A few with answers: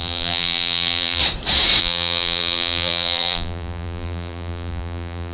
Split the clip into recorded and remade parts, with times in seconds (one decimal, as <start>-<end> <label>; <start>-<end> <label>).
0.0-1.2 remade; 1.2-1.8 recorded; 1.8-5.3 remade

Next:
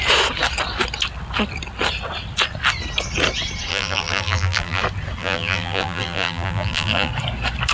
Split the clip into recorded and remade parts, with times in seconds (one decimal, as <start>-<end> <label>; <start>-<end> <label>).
0.0-3.7 recorded; 3.7-4.8 remade; 4.8-5.2 recorded; 5.2-7.1 remade; 7.1-7.7 recorded

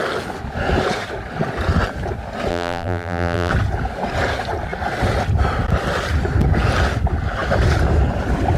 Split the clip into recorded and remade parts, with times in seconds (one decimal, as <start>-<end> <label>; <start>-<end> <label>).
0.0-2.5 recorded; 2.5-3.5 remade; 3.5-8.6 recorded

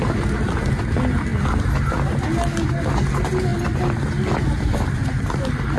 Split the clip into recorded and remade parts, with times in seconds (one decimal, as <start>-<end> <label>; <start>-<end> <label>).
0.0-5.8 recorded

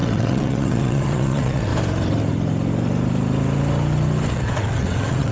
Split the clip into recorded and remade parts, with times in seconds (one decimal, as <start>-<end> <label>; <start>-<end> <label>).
0.0-1.7 remade; 1.7-4.3 recorded; 4.3-5.3 remade

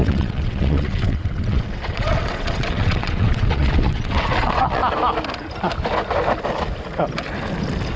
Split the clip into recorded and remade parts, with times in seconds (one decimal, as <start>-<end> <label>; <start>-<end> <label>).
0.0-4.8 remade; 4.8-8.0 recorded